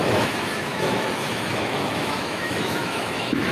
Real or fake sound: fake